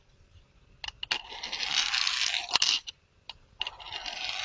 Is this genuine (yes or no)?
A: yes